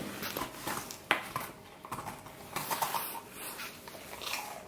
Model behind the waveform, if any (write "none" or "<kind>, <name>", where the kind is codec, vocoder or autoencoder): none